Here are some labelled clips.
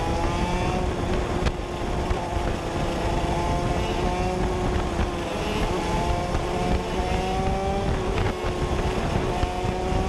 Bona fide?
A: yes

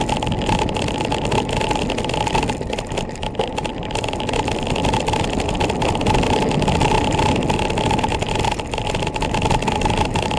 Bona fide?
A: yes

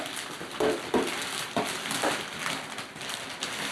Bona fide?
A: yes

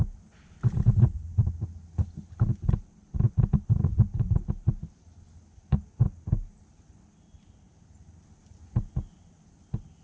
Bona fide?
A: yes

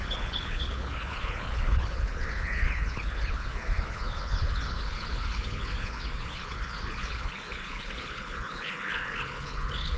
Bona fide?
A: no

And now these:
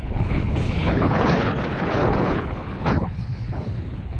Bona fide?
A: no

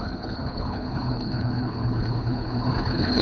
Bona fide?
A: no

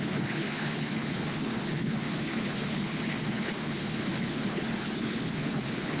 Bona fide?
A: no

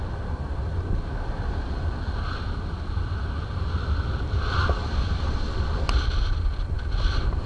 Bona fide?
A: yes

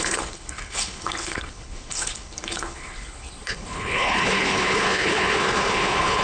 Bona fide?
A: no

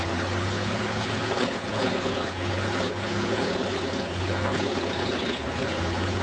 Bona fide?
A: no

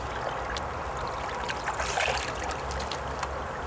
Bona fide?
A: yes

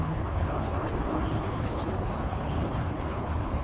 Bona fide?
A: no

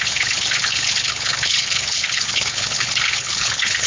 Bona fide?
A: no